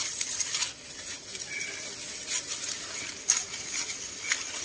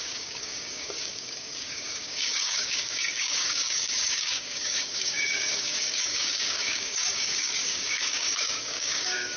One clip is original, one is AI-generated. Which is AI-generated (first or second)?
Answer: second